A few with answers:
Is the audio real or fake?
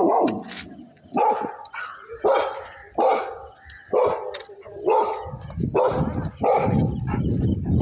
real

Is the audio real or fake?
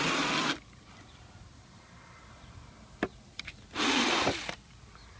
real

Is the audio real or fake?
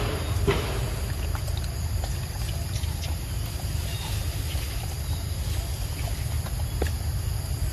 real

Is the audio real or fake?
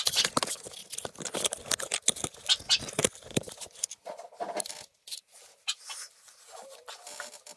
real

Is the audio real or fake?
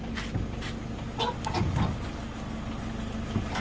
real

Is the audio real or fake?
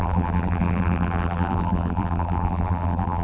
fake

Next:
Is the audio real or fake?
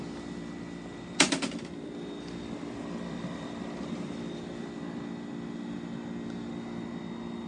real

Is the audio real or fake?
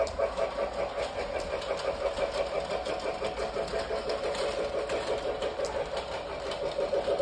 real